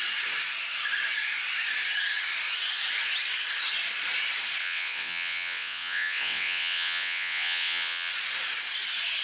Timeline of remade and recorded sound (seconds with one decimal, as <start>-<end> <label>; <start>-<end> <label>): 0.0-4.6 recorded; 4.6-8.1 remade; 8.1-9.2 recorded